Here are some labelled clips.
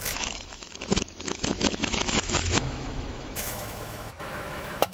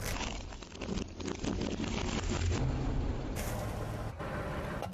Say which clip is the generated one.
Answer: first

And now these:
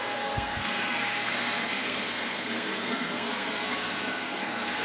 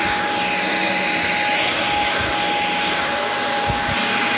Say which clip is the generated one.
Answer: first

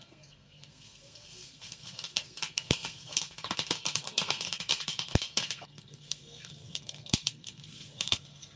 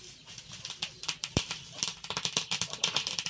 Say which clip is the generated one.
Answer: first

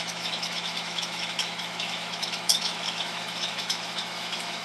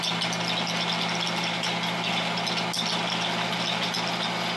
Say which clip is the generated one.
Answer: first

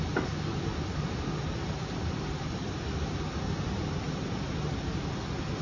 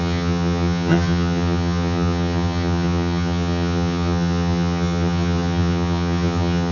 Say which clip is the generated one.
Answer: second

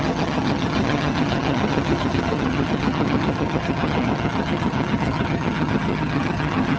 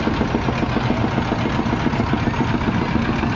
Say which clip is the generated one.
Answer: first